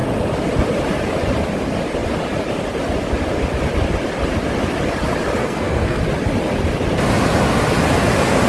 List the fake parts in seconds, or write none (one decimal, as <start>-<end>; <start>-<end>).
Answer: 5.4-6.0